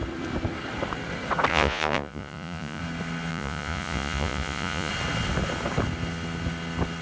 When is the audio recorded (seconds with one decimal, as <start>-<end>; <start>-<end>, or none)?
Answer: 0.0-1.5; 2.8-3.3; 4.9-7.0